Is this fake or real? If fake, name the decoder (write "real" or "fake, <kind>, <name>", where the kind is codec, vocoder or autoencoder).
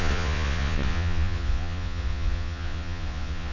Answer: fake, vocoder, Vocos